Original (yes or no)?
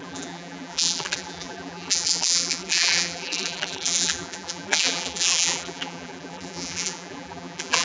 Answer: no